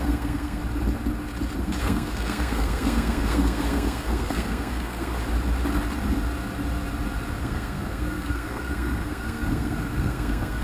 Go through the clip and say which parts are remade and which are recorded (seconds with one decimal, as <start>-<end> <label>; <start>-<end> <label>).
0.0-0.6 remade; 0.6-1.6 recorded; 1.6-5.2 remade; 5.2-7.4 recorded; 7.4-10.6 remade